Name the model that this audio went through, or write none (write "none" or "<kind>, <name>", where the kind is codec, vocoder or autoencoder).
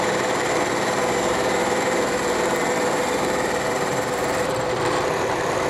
vocoder, BigVGAN v2